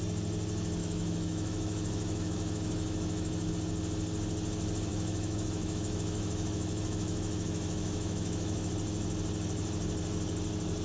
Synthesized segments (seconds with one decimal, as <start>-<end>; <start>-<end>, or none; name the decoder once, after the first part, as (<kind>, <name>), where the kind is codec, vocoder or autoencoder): 0.8-3.5 (autoencoder, DAC-VAE); 4.9-8.7